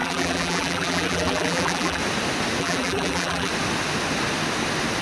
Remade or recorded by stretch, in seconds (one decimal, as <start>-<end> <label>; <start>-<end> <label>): 0.0-2.0 remade; 2.0-2.6 recorded; 2.6-3.5 remade; 3.5-5.0 recorded